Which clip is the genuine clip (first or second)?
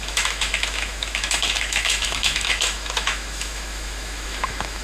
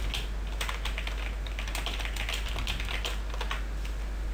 second